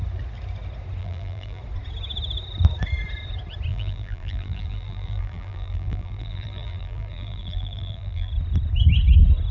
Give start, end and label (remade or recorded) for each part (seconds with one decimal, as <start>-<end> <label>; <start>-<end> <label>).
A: 0.0-1.0 recorded; 1.0-1.6 remade; 1.6-3.7 recorded; 3.7-8.3 remade; 8.3-9.5 recorded